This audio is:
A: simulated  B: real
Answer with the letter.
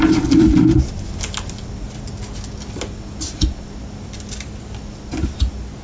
B